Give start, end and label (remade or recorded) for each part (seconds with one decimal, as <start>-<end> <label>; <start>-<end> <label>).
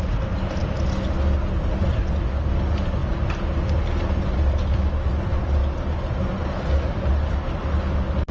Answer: 0.0-8.3 recorded